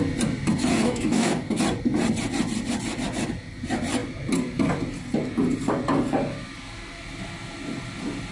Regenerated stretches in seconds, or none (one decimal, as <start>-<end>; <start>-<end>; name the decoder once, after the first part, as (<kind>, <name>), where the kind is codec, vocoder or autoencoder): 0.7-1.6 (codec, DAC)